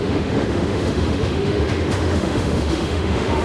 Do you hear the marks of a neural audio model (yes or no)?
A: yes